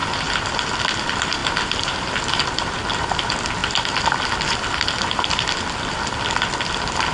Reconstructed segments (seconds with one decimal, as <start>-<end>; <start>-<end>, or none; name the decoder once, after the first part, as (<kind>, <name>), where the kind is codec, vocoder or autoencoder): 0.0-7.1 (vocoder, BigVGAN v2)